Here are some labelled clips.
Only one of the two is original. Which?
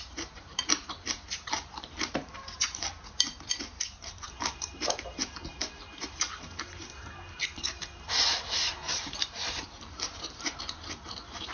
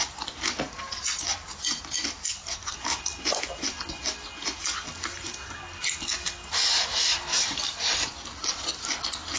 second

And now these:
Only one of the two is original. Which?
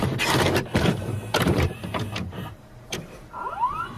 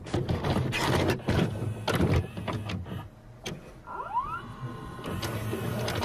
second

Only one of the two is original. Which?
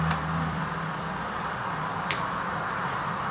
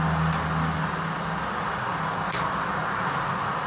second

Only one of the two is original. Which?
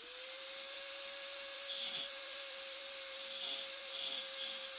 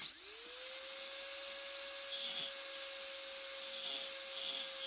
second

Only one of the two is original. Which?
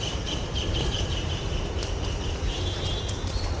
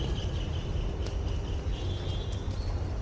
second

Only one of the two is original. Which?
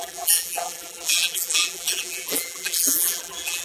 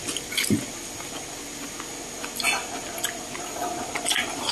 second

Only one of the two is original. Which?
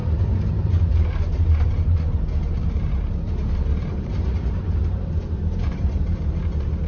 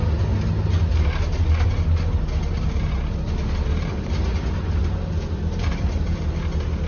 second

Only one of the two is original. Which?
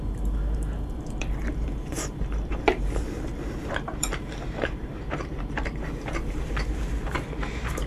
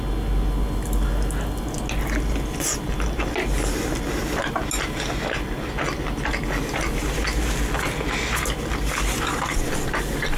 second